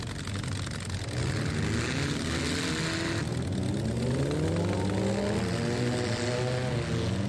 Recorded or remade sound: recorded